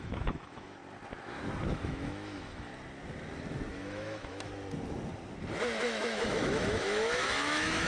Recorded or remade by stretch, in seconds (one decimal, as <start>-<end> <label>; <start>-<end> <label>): 0.0-0.8 remade; 0.8-1.7 recorded; 1.7-2.7 remade; 2.7-3.7 recorded; 3.7-4.5 remade; 4.5-5.8 recorded; 5.8-7.9 remade